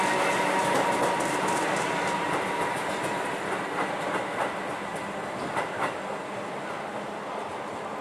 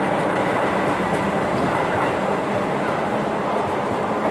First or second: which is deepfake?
second